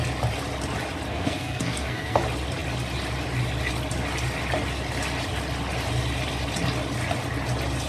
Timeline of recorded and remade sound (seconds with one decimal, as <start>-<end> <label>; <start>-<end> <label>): 0.0-1.1 recorded; 1.1-2.2 remade; 2.2-7.9 recorded